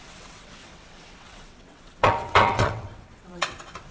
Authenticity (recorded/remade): remade